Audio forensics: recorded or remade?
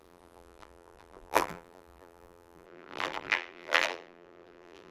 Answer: remade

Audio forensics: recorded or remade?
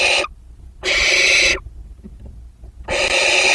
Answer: recorded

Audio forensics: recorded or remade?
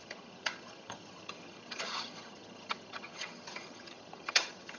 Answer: remade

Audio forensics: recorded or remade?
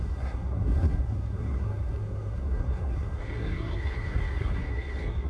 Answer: remade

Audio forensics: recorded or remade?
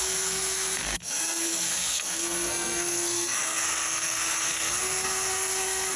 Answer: remade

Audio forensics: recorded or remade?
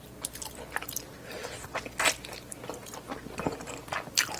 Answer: remade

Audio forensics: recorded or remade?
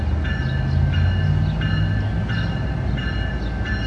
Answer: recorded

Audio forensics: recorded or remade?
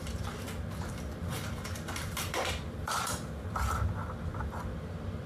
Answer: remade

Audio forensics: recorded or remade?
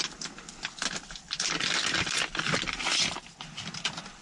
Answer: recorded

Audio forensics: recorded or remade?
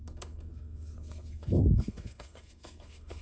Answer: remade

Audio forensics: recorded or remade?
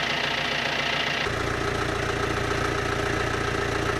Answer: recorded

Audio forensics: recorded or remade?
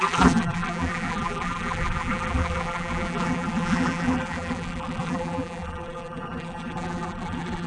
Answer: remade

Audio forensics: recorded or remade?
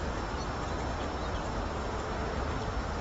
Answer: recorded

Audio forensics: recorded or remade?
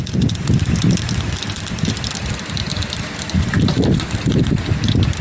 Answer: recorded